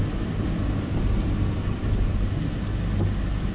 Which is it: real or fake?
real